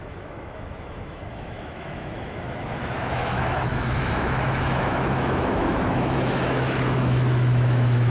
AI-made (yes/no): yes